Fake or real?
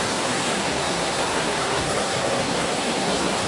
fake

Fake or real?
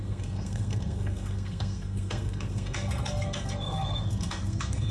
fake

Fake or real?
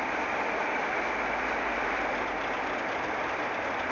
fake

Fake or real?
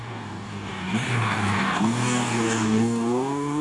fake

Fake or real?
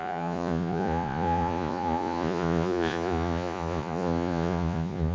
fake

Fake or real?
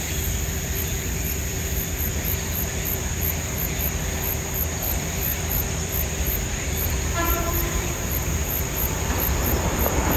fake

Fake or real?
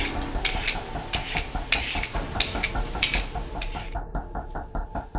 fake